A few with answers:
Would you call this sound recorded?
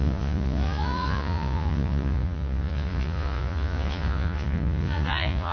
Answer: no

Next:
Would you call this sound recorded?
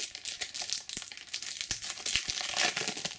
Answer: yes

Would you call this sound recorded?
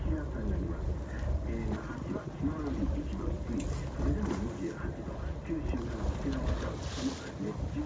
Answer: yes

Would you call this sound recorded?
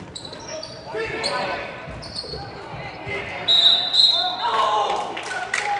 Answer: no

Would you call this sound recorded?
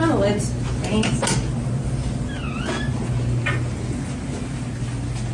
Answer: yes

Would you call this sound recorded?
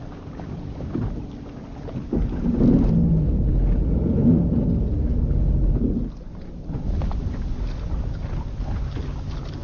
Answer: yes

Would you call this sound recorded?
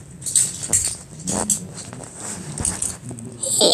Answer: yes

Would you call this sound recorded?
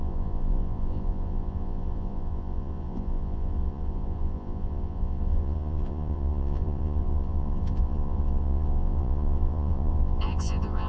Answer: no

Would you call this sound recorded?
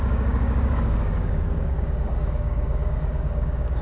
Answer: no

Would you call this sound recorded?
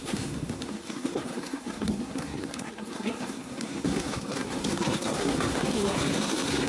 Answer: no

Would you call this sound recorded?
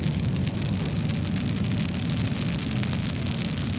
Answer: yes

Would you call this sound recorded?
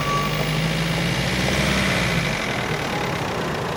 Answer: yes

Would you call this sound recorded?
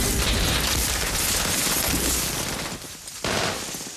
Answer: yes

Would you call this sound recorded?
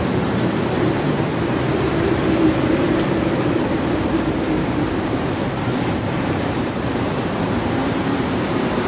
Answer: no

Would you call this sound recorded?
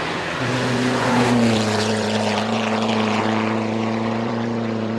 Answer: no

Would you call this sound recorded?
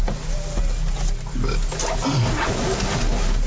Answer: yes